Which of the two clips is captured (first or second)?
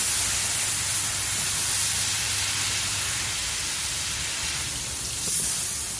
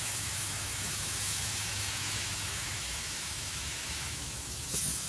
first